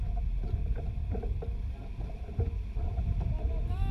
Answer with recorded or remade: recorded